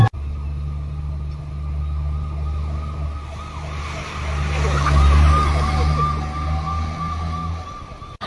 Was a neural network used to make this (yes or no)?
no